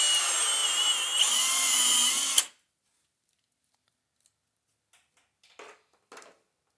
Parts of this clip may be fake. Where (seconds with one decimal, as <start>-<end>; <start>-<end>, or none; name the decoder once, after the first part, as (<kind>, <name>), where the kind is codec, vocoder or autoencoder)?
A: none